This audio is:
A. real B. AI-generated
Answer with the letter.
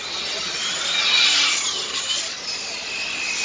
A